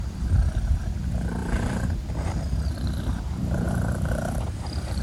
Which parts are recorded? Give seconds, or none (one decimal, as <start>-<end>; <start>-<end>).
0.0-1.4; 2.1-3.4; 4.4-5.0